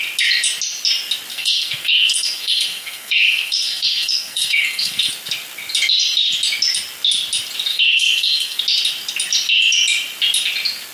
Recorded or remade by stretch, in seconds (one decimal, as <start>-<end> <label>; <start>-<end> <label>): 0.0-1.3 recorded; 1.3-5.1 remade; 5.1-7.7 recorded; 7.7-8.6 remade; 8.6-10.9 recorded

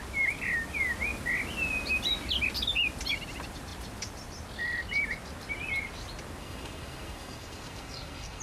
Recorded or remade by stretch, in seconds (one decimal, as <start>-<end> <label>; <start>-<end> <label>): 0.0-6.4 recorded; 6.4-8.4 remade